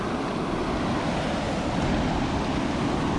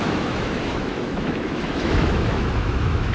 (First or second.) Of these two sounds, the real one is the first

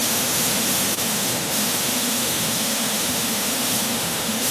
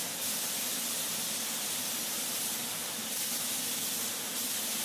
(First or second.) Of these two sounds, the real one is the second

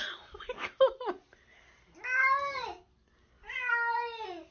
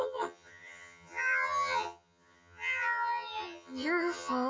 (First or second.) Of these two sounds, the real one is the first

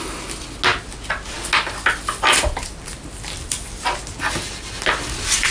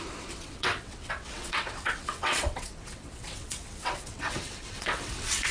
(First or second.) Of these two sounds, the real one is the first